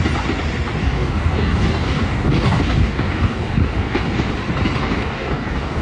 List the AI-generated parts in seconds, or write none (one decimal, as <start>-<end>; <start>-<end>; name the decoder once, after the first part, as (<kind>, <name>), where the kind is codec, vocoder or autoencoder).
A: 0.8-4.3 (codec, DAC); 4.8-5.8